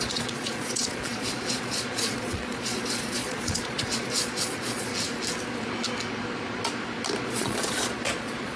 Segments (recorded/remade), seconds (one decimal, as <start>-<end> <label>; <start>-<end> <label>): 0.0-4.9 remade; 4.9-7.2 recorded; 7.2-8.6 remade